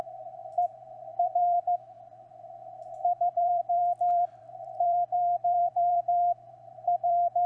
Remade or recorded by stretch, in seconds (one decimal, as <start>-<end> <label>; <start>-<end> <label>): 0.0-7.5 remade